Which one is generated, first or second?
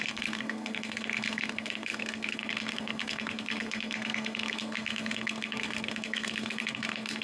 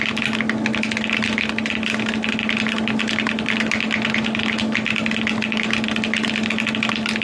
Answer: first